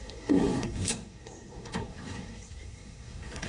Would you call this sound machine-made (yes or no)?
yes